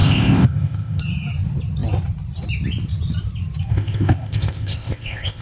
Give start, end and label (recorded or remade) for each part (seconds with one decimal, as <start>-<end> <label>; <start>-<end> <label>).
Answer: 0.0-1.0 remade; 1.0-3.7 recorded; 3.7-5.4 remade